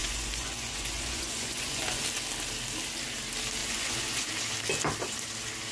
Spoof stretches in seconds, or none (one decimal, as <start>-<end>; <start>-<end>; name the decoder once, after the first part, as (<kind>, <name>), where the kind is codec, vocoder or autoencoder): 0.0-2.0 (vocoder, Vocos); 3.6-4.3